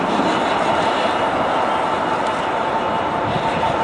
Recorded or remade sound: recorded